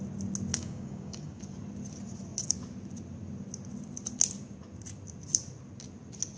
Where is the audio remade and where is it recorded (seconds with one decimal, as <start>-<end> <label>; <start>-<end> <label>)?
0.0-0.5 recorded; 0.5-1.4 remade; 1.4-6.4 recorded